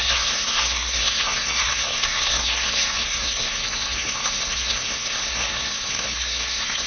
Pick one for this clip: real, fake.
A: fake